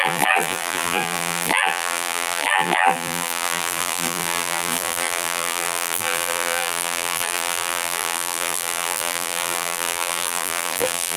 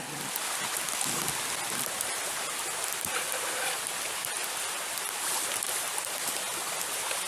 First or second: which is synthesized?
first